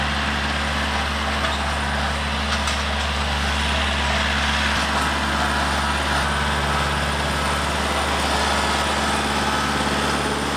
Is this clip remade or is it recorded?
recorded